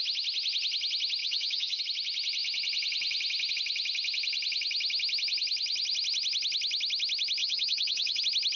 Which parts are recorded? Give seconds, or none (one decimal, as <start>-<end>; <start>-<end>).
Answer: 0.0-1.2; 1.8-7.4; 8.2-8.6